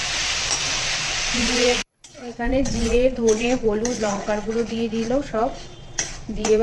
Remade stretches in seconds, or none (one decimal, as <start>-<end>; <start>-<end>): 0.7-6.6